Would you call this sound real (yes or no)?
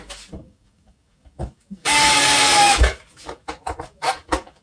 no